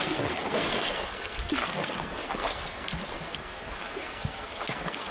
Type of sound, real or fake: fake